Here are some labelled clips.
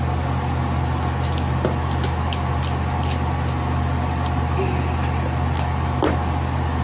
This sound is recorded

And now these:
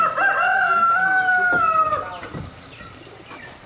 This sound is recorded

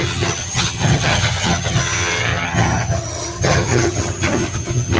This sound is remade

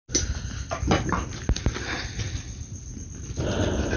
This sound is recorded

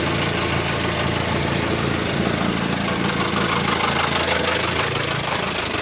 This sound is recorded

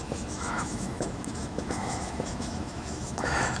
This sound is remade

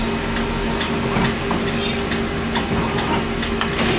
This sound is recorded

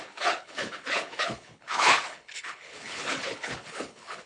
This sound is remade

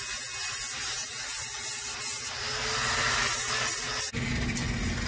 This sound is recorded